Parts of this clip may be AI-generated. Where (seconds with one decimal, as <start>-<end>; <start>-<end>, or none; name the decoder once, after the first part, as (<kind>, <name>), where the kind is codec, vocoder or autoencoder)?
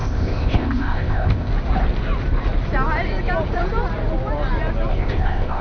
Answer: 0.0-1.5 (codec, ZipCodec); 4.9-5.6